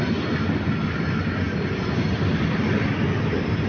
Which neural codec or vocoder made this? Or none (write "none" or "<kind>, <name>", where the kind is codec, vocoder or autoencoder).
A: none